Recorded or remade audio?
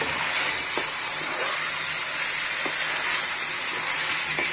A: recorded